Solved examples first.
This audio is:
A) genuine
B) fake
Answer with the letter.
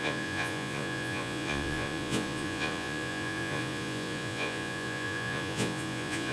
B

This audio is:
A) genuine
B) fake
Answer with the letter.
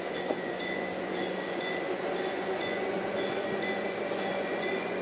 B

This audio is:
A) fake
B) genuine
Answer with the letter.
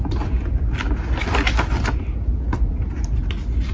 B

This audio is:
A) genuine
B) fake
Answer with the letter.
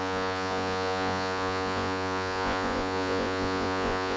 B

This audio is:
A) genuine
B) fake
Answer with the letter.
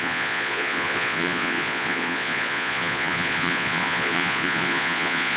B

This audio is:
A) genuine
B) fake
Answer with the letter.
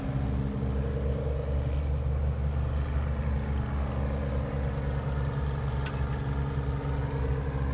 A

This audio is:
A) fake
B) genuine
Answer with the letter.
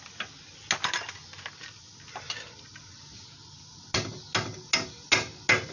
B